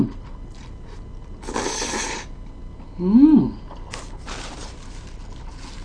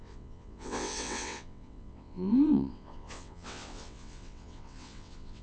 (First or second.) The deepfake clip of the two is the second